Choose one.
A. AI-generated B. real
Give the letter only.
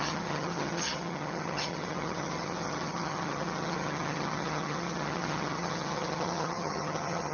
A